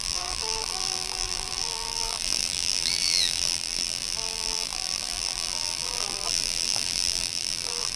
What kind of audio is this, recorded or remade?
remade